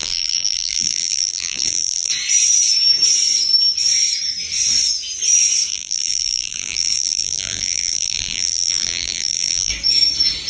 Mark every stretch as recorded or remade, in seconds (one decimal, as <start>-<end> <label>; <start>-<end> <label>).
0.0-2.1 remade; 2.1-5.7 recorded; 5.7-9.7 remade; 9.7-10.5 recorded